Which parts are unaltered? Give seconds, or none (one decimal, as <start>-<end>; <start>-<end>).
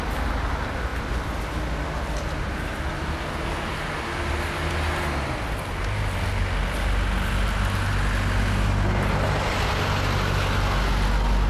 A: 0.0-11.5